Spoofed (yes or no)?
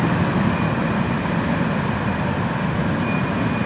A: no